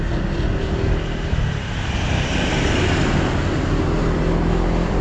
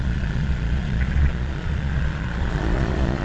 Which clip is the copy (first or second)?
second